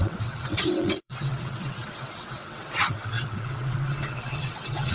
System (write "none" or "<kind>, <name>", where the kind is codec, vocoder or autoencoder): vocoder, WaveNeXt